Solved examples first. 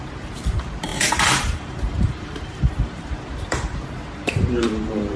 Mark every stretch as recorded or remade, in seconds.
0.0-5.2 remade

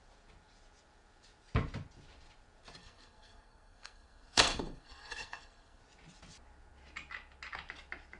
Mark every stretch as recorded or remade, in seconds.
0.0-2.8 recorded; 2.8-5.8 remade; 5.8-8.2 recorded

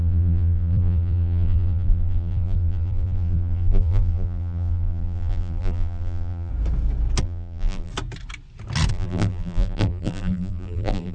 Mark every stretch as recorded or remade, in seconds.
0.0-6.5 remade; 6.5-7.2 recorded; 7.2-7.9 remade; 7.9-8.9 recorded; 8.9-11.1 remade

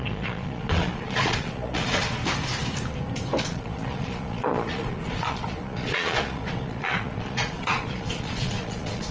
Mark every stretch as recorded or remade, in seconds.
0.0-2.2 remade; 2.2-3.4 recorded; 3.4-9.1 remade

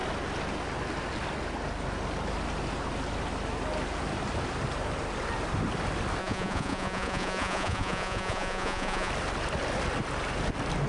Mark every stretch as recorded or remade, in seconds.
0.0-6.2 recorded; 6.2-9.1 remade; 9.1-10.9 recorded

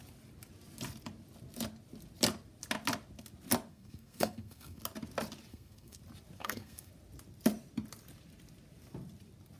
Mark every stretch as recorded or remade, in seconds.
0.0-3.7 recorded; 3.7-4.8 remade; 4.8-5.5 recorded; 5.5-6.0 remade; 6.0-6.4 recorded; 6.4-6.9 remade; 6.9-9.6 recorded

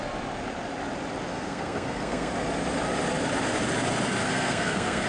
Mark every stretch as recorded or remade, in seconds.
0.0-1.3 recorded; 1.3-2.3 remade; 2.3-4.2 recorded; 4.2-5.1 remade